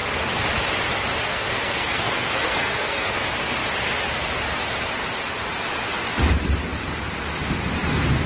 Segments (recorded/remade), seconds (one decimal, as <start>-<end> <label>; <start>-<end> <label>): 0.0-1.3 recorded; 1.3-3.2 remade; 3.2-8.3 recorded